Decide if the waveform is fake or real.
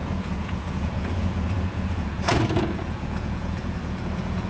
fake